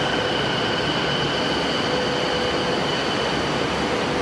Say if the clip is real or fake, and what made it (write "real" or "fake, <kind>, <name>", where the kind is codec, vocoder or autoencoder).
real